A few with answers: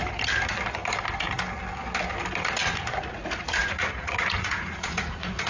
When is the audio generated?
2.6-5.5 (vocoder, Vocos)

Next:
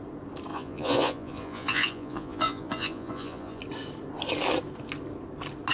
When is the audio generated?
0.5-3.6 (vocoder, Vocos)

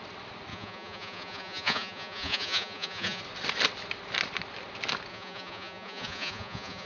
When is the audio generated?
0.5-3.2 (vocoder, Vocos); 5.1-6.9

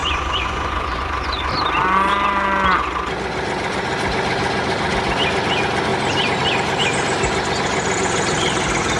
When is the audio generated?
0.0-1.5 (vocoder, Vocos)

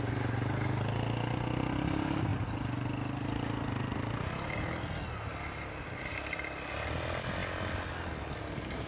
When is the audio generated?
none

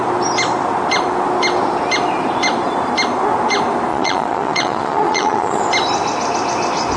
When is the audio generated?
3.9-5.6 (vocoder, Vocos)